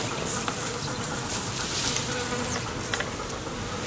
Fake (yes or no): no